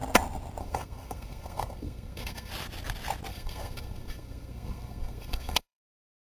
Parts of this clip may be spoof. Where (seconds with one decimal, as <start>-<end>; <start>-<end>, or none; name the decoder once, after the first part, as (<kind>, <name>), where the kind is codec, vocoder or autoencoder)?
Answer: 0.6-2.5 (codec, SNAC); 3.3-5.8